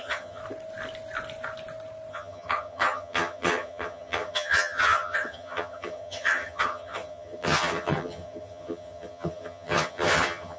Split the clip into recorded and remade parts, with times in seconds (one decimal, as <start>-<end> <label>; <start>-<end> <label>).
0.0-0.4 remade; 0.4-2.1 recorded; 2.1-10.6 remade